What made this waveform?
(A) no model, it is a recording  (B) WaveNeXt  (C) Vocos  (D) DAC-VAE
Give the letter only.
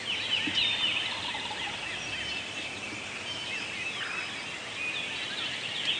A